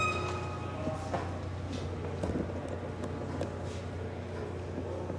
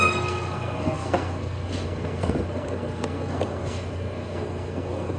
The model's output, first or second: second